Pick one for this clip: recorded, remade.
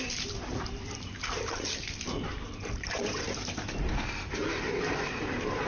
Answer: remade